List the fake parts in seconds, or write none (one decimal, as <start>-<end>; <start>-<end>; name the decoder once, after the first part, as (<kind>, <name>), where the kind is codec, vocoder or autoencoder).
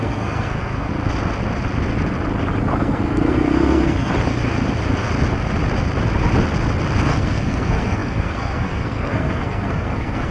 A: 0.0-0.9 (codec, SNAC); 2.8-4.1; 7.1-10.3